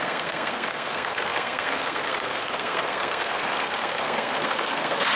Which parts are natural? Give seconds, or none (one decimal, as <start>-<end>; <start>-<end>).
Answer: none